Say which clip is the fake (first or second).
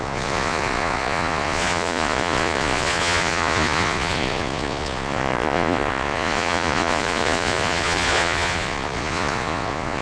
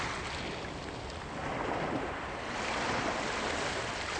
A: first